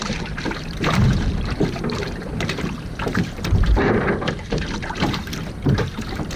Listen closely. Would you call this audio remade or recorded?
remade